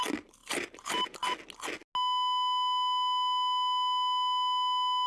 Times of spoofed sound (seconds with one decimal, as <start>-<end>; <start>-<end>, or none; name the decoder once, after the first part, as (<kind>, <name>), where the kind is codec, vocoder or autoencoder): 0.4-1.2 (vocoder, BigVGAN v2)